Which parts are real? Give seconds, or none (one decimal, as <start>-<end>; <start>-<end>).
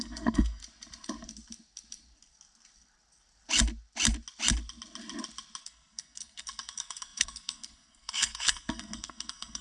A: 0.6-5.6